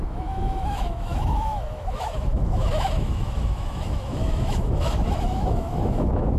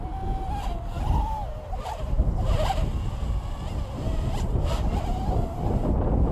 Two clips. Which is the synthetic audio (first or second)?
first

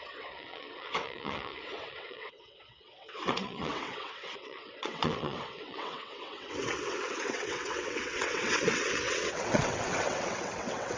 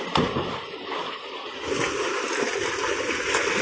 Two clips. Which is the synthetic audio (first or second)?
first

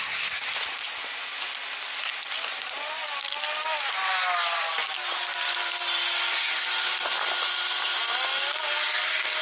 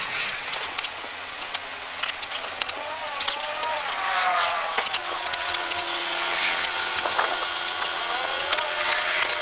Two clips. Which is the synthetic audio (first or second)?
second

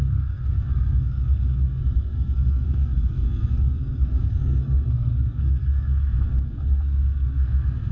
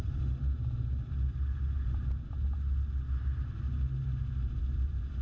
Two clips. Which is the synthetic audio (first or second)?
first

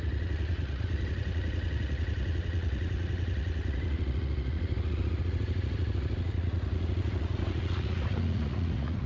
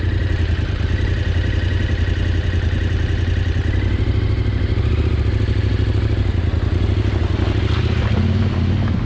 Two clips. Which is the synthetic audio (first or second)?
first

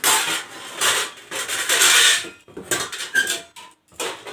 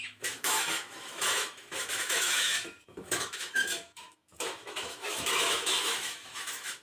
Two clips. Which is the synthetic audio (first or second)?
second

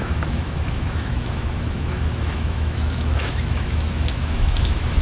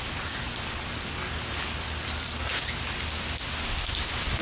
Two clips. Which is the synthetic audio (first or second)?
first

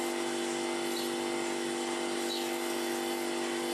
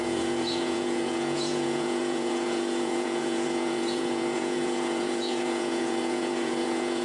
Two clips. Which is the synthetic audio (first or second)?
second